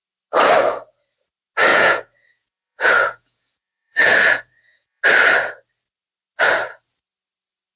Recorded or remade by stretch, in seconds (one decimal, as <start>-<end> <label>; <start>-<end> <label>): 0.0-1.7 recorded; 1.7-5.0 remade; 5.0-7.8 recorded